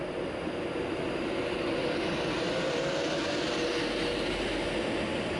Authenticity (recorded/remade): recorded